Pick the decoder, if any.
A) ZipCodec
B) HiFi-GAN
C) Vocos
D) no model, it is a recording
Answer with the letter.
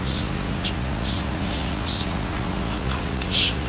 C